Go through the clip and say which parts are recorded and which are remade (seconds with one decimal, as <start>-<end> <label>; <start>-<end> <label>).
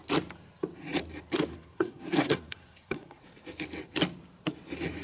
0.0-1.5 recorded; 1.5-3.2 remade; 3.2-5.0 recorded